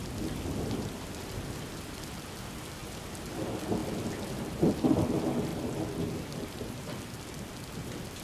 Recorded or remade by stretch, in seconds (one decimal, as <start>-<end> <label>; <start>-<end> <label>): 0.0-1.6 remade; 1.6-2.8 recorded; 2.8-3.3 remade; 3.3-3.8 recorded; 3.8-4.7 remade; 4.7-8.2 recorded